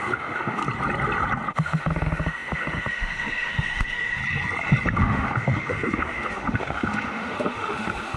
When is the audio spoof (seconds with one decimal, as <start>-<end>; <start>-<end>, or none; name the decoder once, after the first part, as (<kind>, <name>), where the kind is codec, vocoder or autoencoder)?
0.0-0.6 (autoencoder, DAC-VAE); 1.5-4.2; 5.0-8.2